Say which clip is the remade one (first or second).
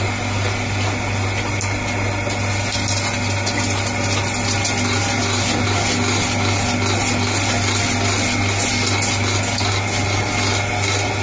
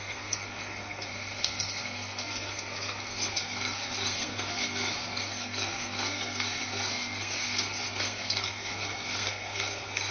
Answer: second